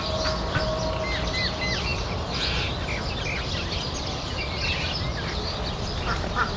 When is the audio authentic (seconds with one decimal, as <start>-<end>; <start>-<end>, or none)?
0.0-6.6